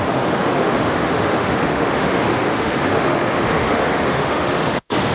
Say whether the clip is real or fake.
fake